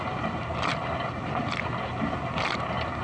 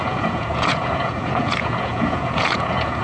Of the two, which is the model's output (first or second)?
second